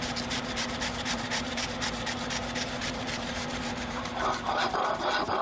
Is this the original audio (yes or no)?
no